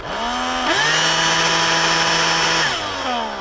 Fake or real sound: real